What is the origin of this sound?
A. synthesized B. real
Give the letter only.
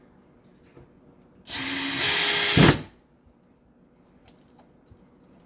B